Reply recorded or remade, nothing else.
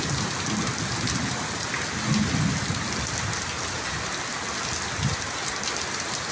recorded